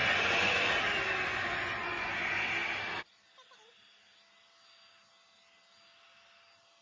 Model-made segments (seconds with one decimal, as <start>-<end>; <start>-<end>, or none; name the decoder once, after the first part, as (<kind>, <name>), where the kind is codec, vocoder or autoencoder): 0.0-0.8 (vocoder, Vocos); 1.3-2.1